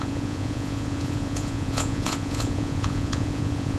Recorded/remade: remade